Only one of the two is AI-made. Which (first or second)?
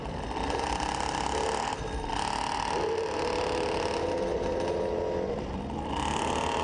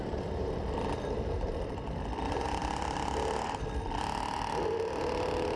second